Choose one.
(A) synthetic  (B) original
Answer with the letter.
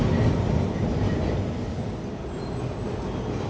B